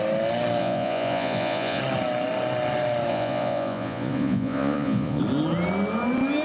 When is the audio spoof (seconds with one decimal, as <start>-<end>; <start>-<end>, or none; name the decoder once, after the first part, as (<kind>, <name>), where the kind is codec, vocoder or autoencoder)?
0.6-1.8 (vocoder, Vocos); 3.1-5.2